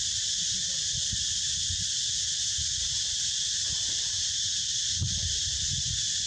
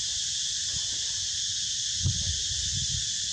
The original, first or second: second